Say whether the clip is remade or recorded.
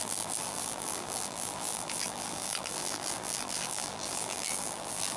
remade